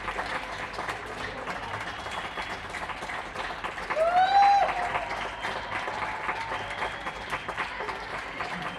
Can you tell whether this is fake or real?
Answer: real